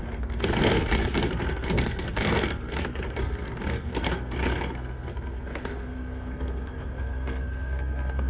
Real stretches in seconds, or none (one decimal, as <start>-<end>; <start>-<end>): none